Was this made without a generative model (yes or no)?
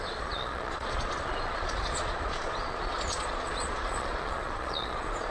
no